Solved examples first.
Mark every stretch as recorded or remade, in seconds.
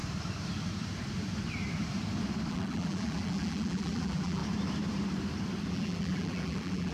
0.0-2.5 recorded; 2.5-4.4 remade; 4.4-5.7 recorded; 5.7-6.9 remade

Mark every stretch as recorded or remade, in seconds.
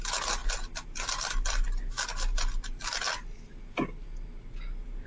0.0-5.1 recorded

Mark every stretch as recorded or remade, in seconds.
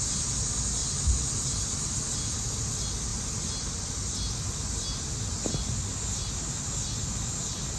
0.0-7.8 recorded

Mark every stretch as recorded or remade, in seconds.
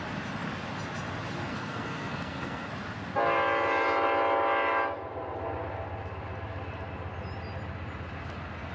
0.0-1.5 recorded; 1.5-2.7 remade; 2.7-8.7 recorded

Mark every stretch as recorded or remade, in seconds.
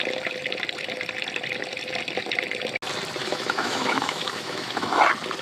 0.0-3.2 recorded; 3.2-5.0 remade; 5.0-5.4 recorded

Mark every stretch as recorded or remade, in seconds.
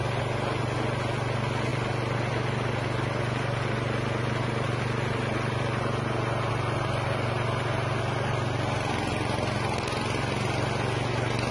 0.0-11.5 recorded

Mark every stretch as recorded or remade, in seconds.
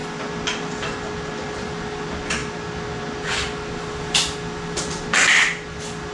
0.0-6.1 recorded